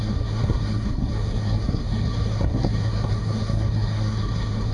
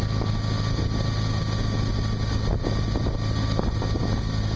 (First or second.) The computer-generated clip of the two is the first